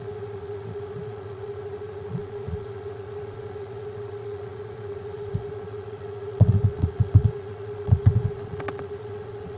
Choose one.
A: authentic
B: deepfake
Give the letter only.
B